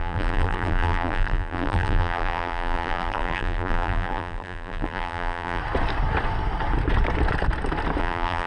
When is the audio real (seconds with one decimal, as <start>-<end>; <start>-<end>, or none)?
5.6-8.0